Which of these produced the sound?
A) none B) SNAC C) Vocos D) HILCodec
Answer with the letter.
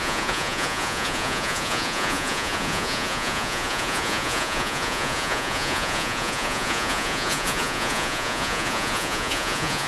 C